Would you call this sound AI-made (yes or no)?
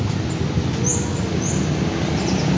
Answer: no